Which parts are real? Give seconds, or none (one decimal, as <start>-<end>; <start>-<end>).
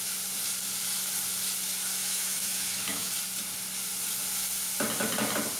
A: 0.0-2.0; 3.1-5.6